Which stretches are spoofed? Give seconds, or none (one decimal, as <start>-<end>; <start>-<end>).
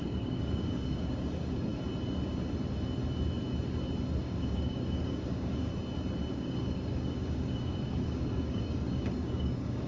0.0-1.7; 4.2-5.7; 6.3-9.9